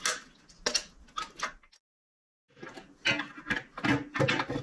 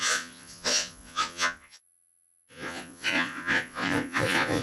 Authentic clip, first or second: first